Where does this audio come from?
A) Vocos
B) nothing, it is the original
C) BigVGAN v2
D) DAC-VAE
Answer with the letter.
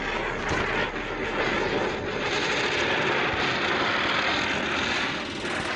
B